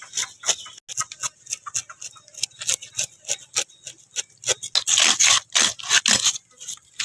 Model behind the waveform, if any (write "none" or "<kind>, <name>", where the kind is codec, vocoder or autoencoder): none